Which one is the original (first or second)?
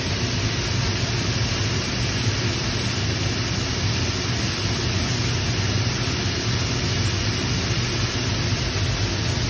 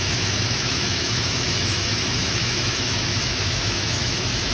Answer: first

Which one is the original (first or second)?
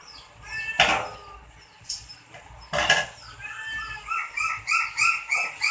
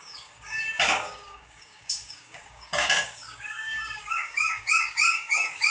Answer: first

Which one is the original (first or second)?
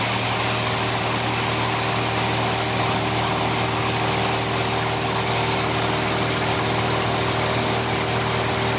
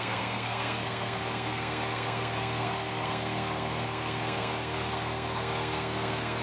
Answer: first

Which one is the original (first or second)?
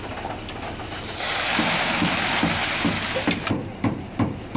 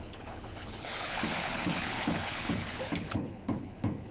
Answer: first